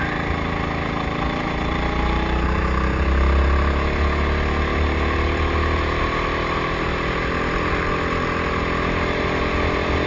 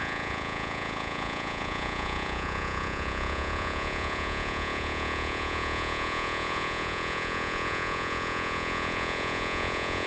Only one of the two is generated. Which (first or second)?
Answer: second